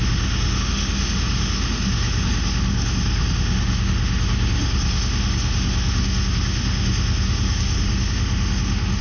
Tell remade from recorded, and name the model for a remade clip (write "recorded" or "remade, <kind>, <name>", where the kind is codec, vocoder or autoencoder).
remade, autoencoder, DAC-VAE